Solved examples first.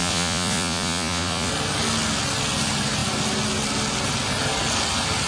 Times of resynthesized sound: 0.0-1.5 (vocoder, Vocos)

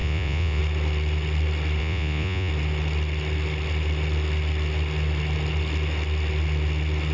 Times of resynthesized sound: 0.0-0.6 (vocoder, Vocos); 1.8-2.5

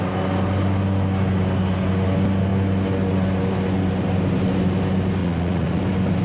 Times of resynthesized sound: 5.2-5.8 (vocoder, Vocos)

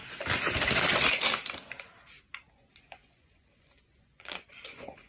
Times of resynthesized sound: 2.5-5.1 (vocoder, Vocos)